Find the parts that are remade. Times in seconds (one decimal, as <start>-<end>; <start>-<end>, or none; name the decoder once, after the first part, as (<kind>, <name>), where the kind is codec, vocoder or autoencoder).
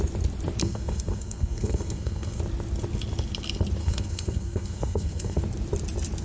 0.6-2.4 (codec, SNAC); 3.8-5.4